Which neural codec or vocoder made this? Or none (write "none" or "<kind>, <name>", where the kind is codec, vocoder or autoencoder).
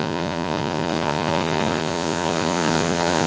vocoder, Vocos